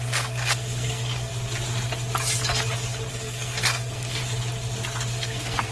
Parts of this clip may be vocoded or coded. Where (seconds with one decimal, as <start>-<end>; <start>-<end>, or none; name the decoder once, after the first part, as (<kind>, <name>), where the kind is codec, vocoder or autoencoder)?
0.0-1.3 (codec, SNAC); 3.1-4.2; 5.1-5.7